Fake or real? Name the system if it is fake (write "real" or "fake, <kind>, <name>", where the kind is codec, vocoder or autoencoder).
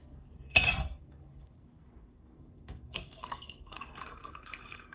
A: fake, codec, SNAC